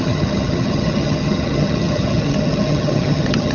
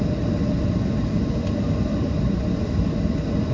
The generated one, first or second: first